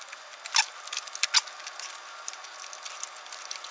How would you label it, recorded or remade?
recorded